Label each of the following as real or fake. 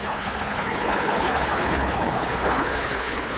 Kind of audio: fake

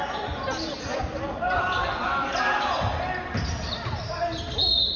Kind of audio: real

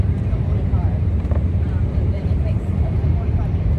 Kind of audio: fake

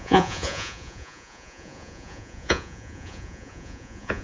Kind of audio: fake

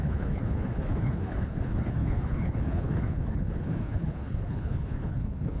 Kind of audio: fake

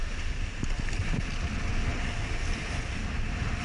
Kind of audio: real